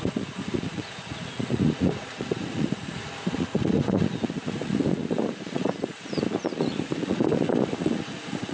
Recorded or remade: remade